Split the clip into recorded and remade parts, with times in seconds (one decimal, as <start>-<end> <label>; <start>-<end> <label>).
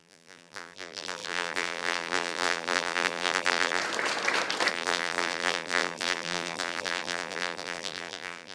0.0-3.8 remade; 3.8-4.7 recorded; 4.7-8.5 remade